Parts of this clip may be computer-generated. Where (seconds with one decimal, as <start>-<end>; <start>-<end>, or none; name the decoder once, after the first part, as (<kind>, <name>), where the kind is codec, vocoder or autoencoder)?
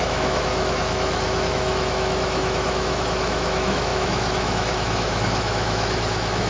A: 0.0-6.5 (autoencoder, DAC-VAE)